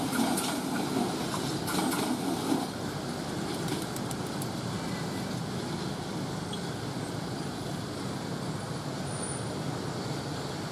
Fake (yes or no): no